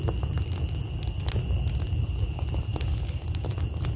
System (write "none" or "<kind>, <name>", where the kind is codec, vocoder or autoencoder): none